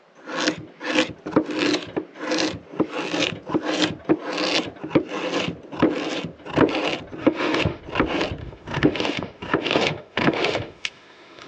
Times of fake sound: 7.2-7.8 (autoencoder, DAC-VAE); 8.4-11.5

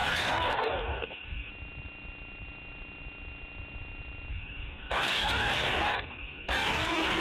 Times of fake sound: 0.0-1.5 (codec, DAC); 4.3-7.2

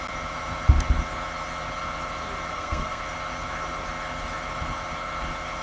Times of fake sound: 2.5-3.0 (codec, SNAC)

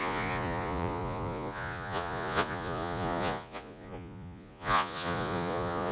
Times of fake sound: 0.0-5.9 (vocoder, Vocos)

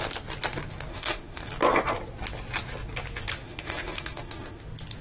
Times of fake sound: 0.9-1.5 (autoencoder, DAC-VAE); 3.4-4.6

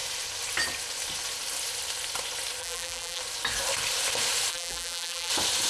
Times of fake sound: 2.6-3.2 (vocoder, BigVGAN v2); 4.5-5.3

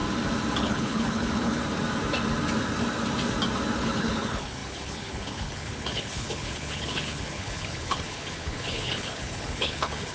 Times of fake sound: 0.6-1.6 (codec, HILCodec); 3.8-10.1

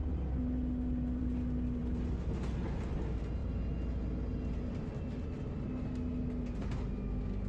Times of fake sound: none